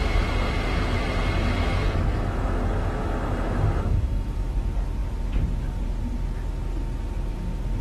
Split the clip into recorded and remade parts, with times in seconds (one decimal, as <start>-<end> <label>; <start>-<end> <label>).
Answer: 0.0-2.1 recorded; 2.1-4.5 remade; 4.5-7.8 recorded